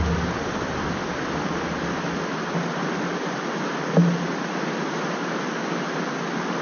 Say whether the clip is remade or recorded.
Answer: recorded